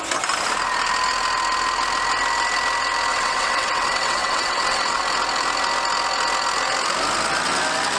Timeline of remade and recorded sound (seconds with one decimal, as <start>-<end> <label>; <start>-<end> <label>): 0.0-3.1 recorded; 3.1-5.0 remade; 5.0-8.0 recorded